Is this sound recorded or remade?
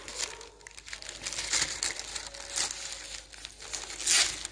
recorded